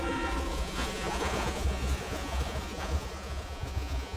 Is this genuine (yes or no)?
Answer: no